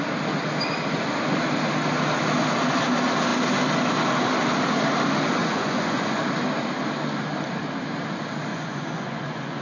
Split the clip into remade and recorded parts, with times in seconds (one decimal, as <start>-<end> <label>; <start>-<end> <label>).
0.0-5.4 recorded; 5.4-6.2 remade; 6.2-8.5 recorded; 8.5-9.6 remade